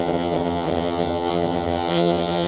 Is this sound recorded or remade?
remade